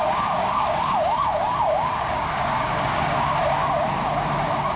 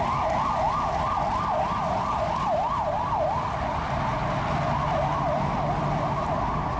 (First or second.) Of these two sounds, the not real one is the first